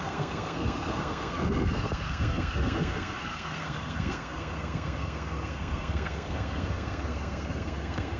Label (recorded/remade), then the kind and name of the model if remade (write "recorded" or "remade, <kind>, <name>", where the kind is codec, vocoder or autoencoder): remade, codec, SNAC